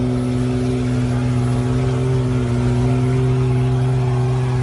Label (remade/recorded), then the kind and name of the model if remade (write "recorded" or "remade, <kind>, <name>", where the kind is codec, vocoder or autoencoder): recorded